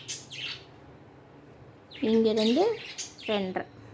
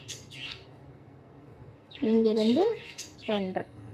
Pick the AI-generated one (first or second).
second